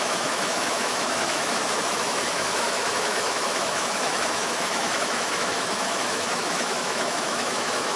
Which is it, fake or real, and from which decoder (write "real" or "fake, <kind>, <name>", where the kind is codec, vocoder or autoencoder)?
fake, autoencoder, DAC-VAE